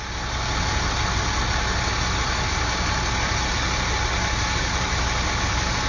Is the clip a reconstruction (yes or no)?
no